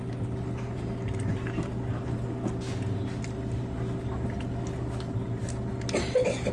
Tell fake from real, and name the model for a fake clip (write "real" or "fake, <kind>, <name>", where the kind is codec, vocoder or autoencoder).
real